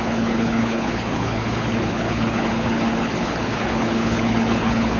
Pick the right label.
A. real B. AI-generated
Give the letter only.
B